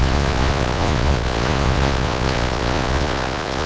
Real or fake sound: fake